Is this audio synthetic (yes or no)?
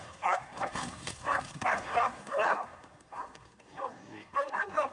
yes